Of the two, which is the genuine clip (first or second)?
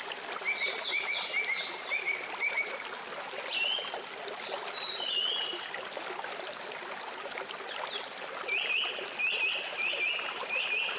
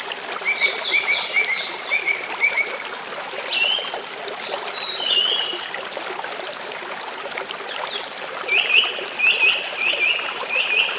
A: first